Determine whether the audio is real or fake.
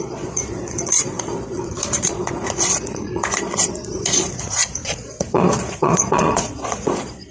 fake